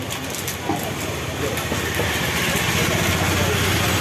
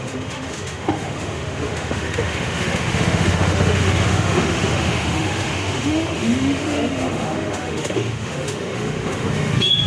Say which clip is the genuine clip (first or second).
first